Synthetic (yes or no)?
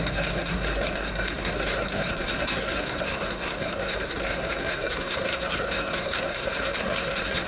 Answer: yes